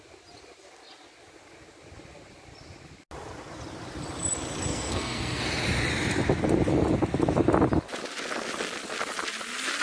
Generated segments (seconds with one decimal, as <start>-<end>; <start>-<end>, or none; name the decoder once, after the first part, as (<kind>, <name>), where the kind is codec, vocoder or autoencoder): 4.7-5.4 (codec, SNAC)